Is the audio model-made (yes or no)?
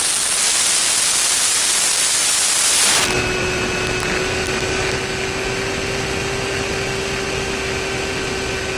no